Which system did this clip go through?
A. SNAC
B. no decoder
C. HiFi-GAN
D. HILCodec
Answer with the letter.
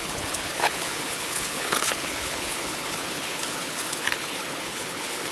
D